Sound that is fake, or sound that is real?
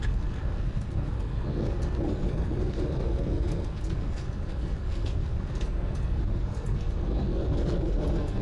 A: fake